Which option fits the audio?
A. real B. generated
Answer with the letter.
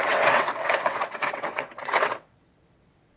B